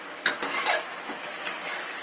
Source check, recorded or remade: recorded